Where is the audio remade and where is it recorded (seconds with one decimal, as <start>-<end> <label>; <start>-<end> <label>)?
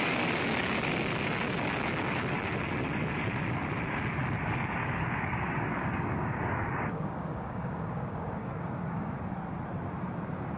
0.0-4.8 recorded; 4.8-9.1 remade; 9.1-10.6 recorded